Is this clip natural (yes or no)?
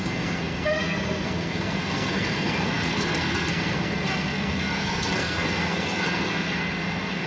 no